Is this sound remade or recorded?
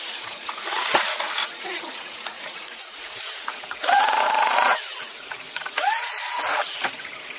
remade